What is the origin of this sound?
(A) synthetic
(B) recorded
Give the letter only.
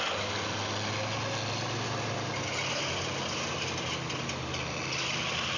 B